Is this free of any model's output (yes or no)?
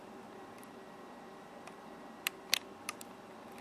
no